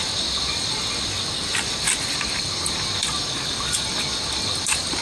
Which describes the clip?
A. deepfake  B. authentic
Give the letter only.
B